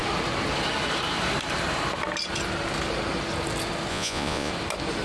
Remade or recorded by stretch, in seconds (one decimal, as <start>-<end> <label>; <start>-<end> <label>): 0.0-3.9 recorded; 3.9-4.5 remade; 4.5-5.0 recorded